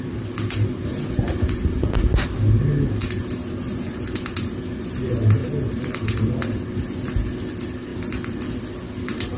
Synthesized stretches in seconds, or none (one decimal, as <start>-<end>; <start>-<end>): none